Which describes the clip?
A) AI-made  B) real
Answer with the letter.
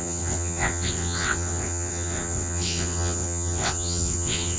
A